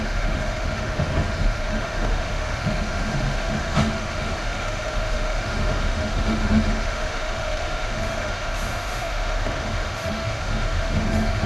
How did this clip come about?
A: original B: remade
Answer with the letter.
B